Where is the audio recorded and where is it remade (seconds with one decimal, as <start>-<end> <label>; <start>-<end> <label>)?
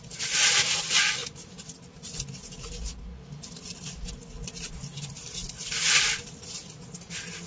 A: 0.0-7.5 recorded